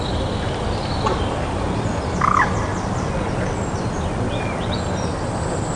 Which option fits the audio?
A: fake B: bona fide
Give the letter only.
B